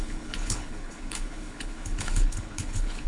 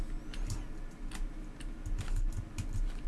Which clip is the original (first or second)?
second